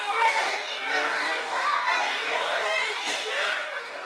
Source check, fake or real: fake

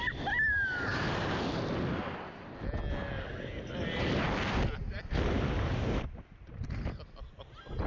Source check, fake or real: real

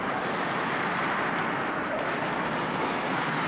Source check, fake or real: real